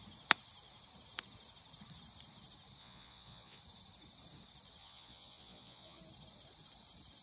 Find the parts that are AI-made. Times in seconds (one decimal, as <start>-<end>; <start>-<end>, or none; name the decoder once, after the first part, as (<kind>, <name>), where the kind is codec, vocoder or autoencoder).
2.8-3.6 (vocoder, Vocos); 4.8-6.0